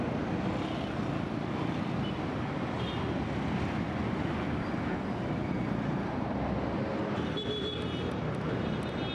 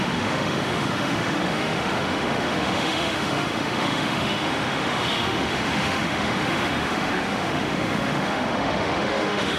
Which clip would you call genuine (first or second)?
first